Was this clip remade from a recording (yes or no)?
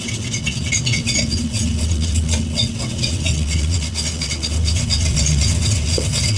yes